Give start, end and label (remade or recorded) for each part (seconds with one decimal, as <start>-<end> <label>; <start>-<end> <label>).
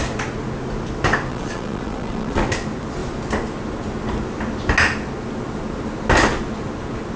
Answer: 0.0-1.3 recorded; 1.3-2.4 remade; 2.4-7.2 recorded